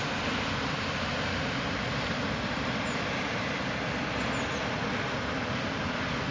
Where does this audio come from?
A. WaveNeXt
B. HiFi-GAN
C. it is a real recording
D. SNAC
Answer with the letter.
C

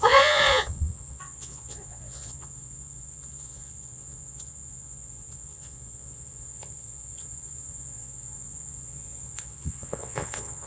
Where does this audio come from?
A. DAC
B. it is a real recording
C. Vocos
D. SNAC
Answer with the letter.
C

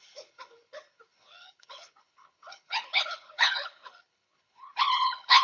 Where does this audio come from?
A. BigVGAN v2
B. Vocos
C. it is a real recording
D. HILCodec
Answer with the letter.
D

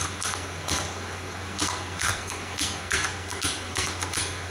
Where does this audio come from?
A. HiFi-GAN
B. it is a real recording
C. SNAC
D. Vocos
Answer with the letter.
C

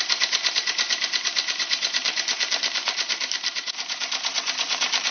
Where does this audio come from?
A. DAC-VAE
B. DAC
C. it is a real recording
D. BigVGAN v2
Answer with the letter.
D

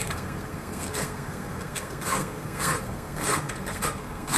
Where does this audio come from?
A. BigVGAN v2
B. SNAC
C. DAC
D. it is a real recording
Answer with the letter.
B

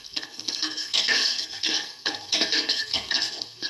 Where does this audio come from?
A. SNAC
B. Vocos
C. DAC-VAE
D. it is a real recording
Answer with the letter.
A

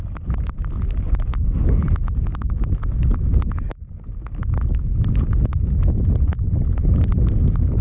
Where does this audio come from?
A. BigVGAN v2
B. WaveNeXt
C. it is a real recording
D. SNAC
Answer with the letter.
C